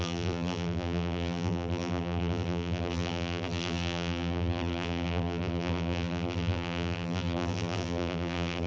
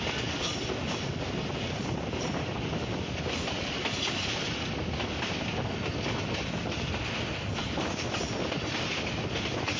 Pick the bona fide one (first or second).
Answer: second